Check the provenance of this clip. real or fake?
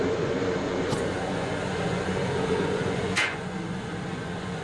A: fake